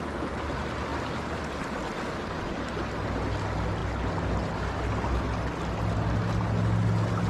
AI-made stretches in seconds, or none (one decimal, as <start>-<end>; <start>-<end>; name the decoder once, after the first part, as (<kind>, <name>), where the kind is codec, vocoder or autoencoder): none